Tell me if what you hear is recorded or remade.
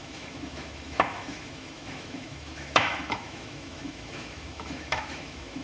remade